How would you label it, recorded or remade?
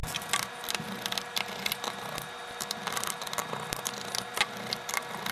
recorded